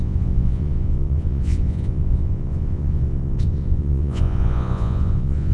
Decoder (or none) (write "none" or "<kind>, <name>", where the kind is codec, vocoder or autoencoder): vocoder, Vocos